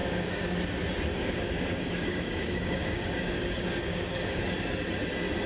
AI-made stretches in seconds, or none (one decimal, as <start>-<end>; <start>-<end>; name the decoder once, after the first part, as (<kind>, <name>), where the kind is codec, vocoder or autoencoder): 0.0-0.6 (codec, DAC); 1.1-4.4

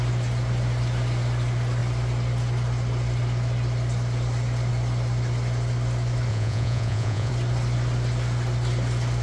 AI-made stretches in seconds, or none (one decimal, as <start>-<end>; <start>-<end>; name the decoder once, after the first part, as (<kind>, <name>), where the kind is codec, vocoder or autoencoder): 6.3-7.3 (vocoder, Vocos)

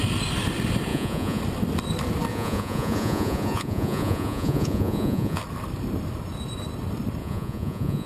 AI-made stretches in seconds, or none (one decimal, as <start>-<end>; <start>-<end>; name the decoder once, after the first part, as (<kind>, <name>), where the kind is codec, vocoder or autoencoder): 0.9-1.4 (vocoder, Vocos); 2.3-5.4; 7.2-8.1

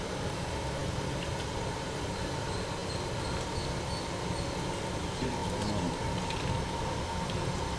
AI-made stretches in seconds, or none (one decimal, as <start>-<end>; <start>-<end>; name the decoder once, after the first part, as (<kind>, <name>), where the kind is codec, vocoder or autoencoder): none

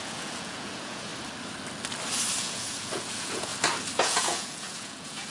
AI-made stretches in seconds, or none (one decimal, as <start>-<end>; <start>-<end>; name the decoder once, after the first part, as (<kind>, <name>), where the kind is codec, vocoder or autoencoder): 0.0-1.1 (vocoder, Vocos); 2.4-3.5; 4.0-5.3

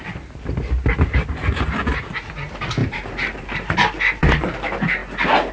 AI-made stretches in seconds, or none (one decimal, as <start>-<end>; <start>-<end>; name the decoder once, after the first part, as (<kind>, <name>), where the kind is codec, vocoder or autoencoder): 2.8-4.3 (vocoder, BigVGAN v2)

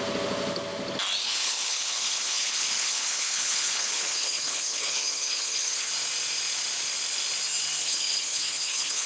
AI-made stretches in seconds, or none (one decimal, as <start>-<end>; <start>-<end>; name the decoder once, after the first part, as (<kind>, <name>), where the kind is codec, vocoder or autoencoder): 1.2-5.9 (codec, HILCodec); 7.8-9.1

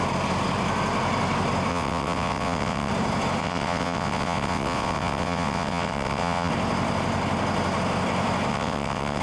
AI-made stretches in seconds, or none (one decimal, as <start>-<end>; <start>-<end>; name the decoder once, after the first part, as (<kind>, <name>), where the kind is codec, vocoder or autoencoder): 1.7-2.9 (vocoder, WaveNeXt); 3.4-6.5; 8.5-9.2